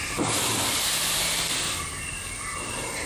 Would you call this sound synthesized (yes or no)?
no